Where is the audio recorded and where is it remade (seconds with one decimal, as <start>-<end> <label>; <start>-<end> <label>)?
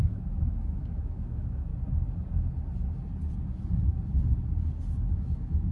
0.0-1.7 remade; 1.7-5.1 recorded; 5.1-5.7 remade